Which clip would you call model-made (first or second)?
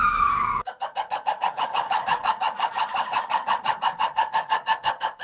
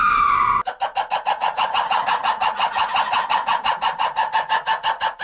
first